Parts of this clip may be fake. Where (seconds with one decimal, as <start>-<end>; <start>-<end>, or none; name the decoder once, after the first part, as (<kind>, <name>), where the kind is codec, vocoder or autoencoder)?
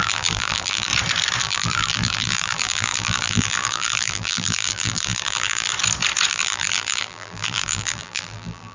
0.0-0.9 (vocoder, BigVGAN v2); 1.4-5.7; 6.3-8.7